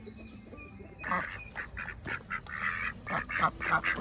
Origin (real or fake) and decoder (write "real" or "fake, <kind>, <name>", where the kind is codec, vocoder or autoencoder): real